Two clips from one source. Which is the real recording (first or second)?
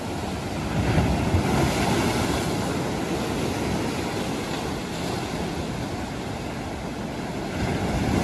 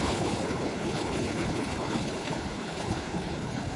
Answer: first